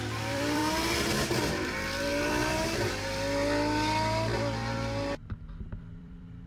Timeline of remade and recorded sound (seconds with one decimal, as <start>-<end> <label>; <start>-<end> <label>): 0.0-0.6 remade; 0.6-1.5 recorded; 1.5-2.1 remade; 2.1-5.8 recorded; 5.8-6.5 remade